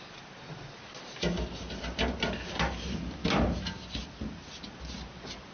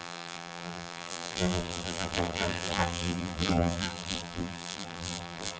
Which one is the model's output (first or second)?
second